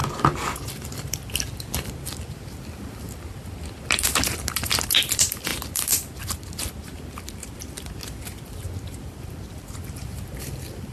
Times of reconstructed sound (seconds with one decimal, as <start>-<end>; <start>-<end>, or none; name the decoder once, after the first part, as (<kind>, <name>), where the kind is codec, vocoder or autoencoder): 4.9-5.5 (vocoder, BigVGAN v2); 7.5-10.9